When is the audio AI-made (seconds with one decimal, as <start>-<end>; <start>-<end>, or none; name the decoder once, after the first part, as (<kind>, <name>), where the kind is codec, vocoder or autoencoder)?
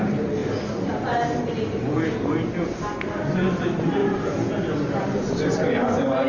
none